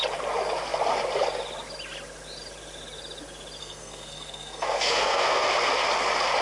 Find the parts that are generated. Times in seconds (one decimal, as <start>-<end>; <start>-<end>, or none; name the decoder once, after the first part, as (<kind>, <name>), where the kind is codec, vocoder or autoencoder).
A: 3.6-5.5 (codec, SNAC)

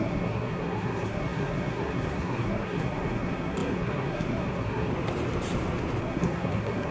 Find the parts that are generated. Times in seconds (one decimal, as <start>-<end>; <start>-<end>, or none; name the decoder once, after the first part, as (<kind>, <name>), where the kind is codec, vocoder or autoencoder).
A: 0.0-4.9 (codec, SNAC); 6.0-6.9